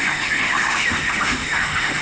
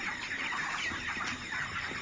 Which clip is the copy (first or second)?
first